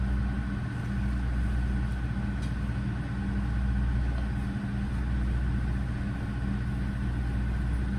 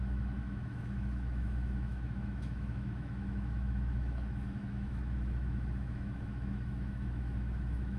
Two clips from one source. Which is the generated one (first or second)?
second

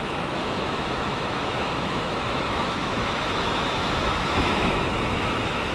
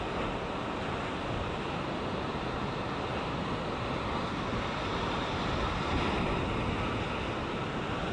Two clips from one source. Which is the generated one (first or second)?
first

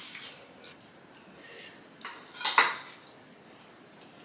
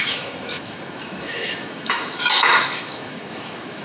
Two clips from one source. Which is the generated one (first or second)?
second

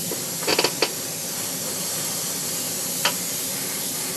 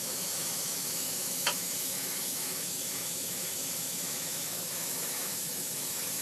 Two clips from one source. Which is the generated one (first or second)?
second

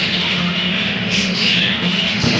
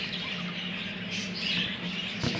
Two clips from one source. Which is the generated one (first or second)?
first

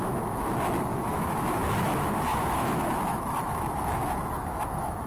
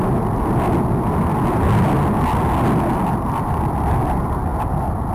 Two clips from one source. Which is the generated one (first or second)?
first